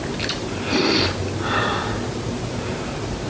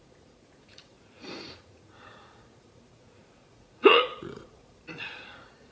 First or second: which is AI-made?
second